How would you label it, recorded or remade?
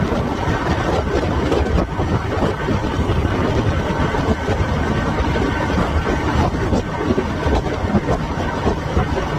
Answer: recorded